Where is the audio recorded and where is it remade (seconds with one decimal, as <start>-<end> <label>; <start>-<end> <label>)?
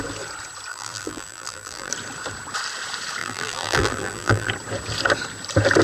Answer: 0.0-0.7 recorded; 0.7-1.9 remade; 1.9-3.2 recorded; 3.2-4.5 remade; 4.5-5.8 recorded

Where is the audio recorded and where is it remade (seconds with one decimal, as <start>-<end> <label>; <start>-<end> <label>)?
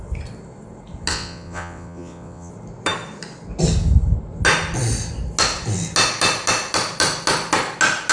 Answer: 0.0-1.1 recorded; 1.1-2.5 remade; 2.5-8.1 recorded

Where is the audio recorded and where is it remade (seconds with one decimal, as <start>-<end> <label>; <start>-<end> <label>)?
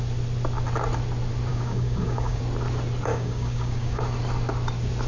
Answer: 0.0-1.5 recorded; 1.5-2.4 remade; 2.4-3.1 recorded; 3.1-4.0 remade; 4.0-5.1 recorded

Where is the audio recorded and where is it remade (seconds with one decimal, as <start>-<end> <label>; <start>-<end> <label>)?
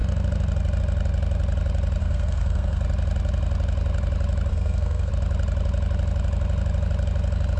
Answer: 0.0-2.0 recorded; 2.0-2.8 remade; 2.8-4.5 recorded; 4.5-5.1 remade; 5.1-7.6 recorded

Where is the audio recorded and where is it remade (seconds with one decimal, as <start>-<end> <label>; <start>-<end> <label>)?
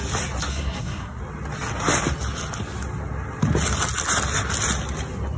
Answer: 0.0-0.5 recorded; 0.5-1.2 remade; 1.2-5.4 recorded